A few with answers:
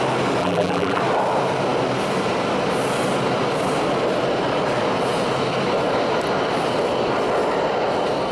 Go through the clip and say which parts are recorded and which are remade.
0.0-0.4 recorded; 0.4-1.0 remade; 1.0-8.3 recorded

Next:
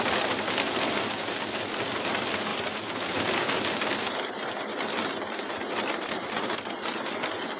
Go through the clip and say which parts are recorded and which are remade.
0.0-2.5 remade; 2.5-4.1 recorded; 4.1-7.6 remade

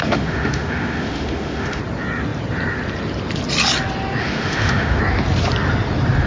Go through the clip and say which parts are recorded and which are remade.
0.0-1.8 remade; 1.8-4.2 recorded; 4.2-5.0 remade; 5.0-6.3 recorded

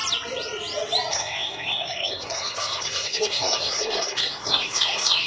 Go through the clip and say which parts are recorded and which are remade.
0.0-1.1 recorded; 1.1-5.3 remade

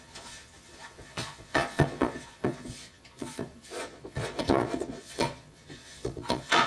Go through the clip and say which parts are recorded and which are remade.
0.0-6.7 remade

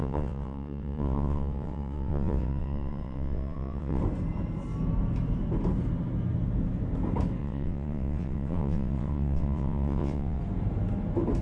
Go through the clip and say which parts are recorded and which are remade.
0.0-4.0 remade; 4.0-7.4 recorded; 7.4-10.4 remade; 10.4-11.4 recorded

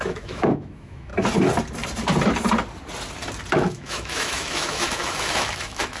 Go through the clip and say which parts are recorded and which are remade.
0.0-1.1 remade; 1.1-3.5 recorded; 3.5-6.0 remade